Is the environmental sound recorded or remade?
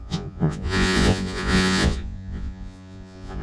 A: remade